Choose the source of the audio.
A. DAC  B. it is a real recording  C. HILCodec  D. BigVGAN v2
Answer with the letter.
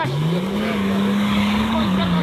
A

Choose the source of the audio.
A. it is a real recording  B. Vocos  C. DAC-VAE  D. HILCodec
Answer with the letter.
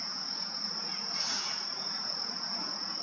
B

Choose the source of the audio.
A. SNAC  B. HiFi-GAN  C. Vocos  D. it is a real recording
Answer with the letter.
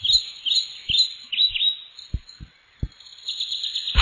D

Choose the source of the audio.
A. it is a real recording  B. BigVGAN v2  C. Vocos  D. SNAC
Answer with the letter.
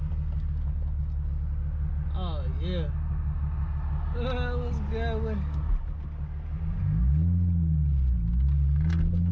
A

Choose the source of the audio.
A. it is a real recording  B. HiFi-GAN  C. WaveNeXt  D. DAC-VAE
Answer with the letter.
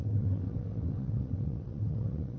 C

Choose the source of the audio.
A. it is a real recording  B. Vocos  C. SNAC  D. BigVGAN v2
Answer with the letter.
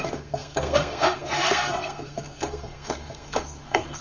C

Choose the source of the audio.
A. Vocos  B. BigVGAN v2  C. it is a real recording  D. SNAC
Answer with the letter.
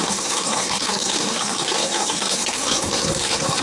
D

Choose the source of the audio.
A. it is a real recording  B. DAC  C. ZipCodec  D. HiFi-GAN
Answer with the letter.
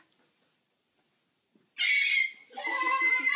A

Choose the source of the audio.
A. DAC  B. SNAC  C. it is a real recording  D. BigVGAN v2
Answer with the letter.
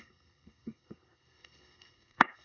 B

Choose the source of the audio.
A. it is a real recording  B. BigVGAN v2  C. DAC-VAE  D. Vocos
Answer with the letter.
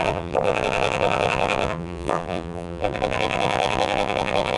B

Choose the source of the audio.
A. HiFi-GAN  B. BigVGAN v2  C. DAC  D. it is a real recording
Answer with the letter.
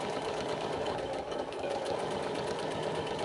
C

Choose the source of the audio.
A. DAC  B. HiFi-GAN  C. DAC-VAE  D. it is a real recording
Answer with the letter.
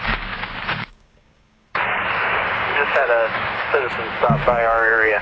A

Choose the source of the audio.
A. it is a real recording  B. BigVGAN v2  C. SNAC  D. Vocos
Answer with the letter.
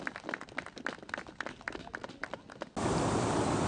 A